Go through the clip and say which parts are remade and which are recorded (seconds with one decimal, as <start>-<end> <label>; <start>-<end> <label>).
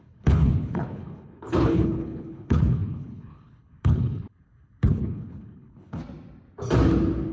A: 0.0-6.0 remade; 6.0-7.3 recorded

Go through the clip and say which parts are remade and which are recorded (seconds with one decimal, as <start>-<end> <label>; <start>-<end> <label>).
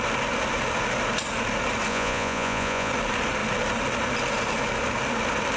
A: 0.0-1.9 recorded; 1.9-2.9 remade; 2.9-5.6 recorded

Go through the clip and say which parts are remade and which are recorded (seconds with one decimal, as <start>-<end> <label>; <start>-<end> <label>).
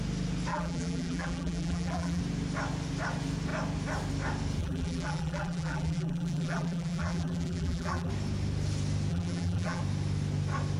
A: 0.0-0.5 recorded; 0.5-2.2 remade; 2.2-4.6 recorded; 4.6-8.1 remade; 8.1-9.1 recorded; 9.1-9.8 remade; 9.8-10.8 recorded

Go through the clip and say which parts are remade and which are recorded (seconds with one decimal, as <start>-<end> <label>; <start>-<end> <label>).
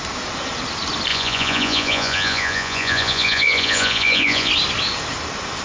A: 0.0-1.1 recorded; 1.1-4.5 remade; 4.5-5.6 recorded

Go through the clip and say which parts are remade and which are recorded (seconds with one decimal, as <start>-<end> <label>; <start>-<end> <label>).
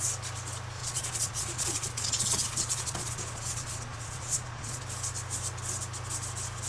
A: 0.0-0.8 recorded; 0.8-4.8 remade; 4.8-6.7 recorded